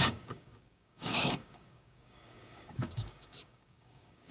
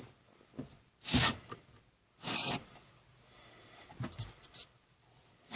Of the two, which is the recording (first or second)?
second